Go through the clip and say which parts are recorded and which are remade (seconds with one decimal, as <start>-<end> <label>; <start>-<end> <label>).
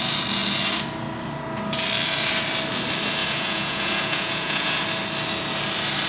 0.0-3.2 recorded; 3.2-4.8 remade; 4.8-6.1 recorded